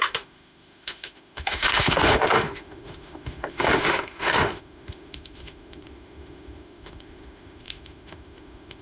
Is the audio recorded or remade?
remade